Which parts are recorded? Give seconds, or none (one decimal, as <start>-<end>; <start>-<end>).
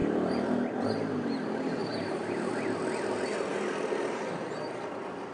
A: 0.7-1.8; 2.5-5.3